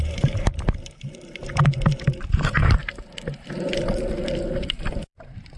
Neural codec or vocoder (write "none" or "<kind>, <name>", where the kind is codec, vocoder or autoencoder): vocoder, BigVGAN v2